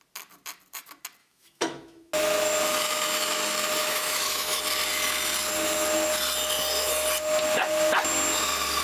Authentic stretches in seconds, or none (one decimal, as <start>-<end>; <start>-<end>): 0.0-1.2; 2.1-3.8; 4.6-8.8